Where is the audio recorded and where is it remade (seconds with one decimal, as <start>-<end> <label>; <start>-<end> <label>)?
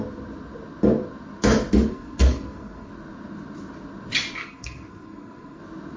0.0-1.9 recorded; 1.9-2.9 remade; 2.9-4.4 recorded; 4.4-5.6 remade; 5.6-6.0 recorded